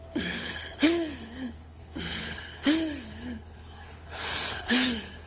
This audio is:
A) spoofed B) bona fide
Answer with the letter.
A